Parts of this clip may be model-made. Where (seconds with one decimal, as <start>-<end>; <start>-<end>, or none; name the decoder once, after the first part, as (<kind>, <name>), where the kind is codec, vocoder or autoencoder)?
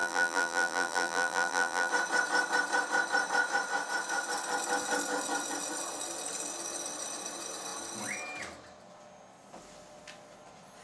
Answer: 0.0-1.9 (vocoder, BigVGAN v2)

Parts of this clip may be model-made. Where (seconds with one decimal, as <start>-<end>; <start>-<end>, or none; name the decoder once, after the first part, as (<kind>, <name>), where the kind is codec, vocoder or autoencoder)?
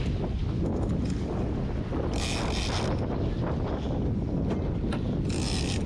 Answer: none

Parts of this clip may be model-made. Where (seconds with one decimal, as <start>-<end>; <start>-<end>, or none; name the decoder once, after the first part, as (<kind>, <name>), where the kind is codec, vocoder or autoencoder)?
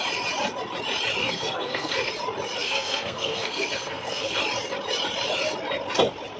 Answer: 1.2-2.1 (codec, SNAC); 2.6-4.4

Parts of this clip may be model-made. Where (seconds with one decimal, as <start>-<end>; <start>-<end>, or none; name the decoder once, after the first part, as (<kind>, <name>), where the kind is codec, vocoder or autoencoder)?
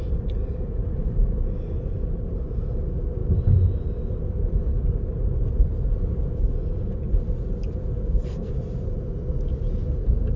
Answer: 8.0-8.5 (codec, SNAC)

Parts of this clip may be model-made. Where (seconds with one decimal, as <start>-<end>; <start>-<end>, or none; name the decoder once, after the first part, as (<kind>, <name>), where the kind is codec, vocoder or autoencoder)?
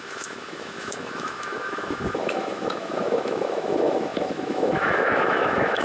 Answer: 0.0-5.8 (autoencoder, DAC-VAE)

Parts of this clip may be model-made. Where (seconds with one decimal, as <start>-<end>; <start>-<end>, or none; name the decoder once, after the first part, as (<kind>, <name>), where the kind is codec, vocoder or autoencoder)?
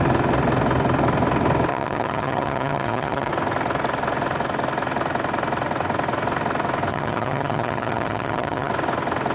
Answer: 1.7-3.3 (vocoder, HiFi-GAN); 6.9-8.7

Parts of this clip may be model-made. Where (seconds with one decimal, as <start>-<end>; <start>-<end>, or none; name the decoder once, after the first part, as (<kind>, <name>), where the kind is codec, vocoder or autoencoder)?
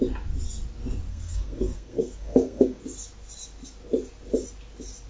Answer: 1.1-2.8 (codec, SNAC)